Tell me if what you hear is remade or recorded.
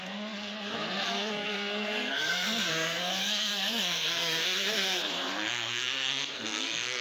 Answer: remade